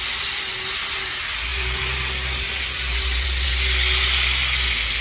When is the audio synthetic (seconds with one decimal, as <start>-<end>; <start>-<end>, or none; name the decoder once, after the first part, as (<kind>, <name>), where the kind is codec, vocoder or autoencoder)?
1.5-3.5 (vocoder, BigVGAN v2)